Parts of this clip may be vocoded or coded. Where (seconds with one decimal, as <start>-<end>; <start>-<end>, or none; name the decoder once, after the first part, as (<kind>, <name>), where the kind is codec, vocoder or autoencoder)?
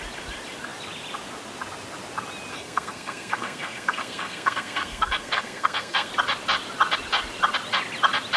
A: 2.5-6.1 (codec, SNAC)